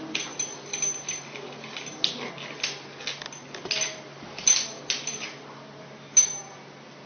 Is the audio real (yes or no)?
yes